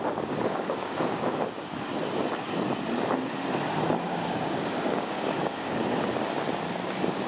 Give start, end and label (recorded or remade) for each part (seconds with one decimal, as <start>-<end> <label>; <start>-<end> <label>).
0.0-1.9 remade; 1.9-4.0 recorded; 4.0-5.8 remade; 5.8-7.3 recorded